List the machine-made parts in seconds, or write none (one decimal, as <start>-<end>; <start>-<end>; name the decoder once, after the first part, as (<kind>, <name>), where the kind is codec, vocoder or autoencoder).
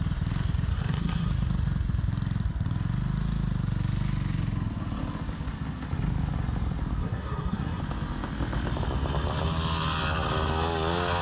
0.7-1.3 (codec, SNAC); 7.0-7.8